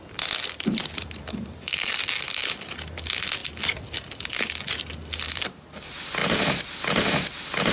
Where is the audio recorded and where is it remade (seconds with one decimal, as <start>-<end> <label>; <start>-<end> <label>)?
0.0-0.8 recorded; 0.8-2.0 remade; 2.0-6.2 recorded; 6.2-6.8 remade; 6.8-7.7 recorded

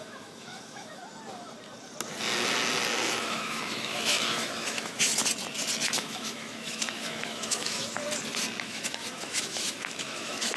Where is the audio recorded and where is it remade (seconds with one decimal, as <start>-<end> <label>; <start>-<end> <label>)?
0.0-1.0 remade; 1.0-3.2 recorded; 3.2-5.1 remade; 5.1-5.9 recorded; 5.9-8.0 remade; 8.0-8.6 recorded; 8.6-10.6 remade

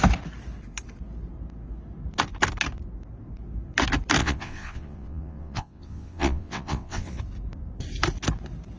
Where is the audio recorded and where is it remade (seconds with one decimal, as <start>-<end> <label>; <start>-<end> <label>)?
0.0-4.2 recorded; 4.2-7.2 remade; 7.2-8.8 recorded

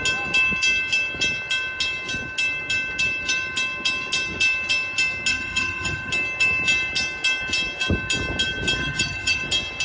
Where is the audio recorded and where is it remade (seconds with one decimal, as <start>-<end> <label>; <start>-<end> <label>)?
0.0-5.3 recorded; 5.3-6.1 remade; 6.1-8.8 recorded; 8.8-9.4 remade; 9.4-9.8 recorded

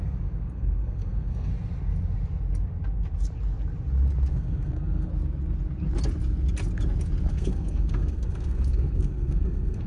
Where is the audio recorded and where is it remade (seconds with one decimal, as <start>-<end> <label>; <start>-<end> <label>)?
0.0-1.5 remade; 1.5-4.3 recorded; 4.3-5.1 remade; 5.1-7.3 recorded; 7.3-9.9 remade

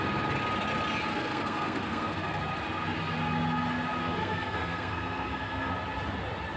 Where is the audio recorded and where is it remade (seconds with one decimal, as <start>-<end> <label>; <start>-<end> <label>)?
0.0-1.1 recorded; 1.1-2.4 remade; 2.4-4.0 recorded; 4.0-5.7 remade; 5.7-6.6 recorded

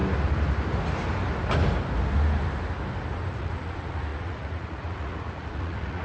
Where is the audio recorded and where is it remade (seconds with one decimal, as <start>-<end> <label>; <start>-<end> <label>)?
0.0-3.3 recorded; 3.3-6.0 remade